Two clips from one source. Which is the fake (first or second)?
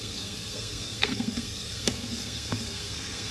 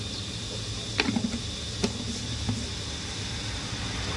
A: first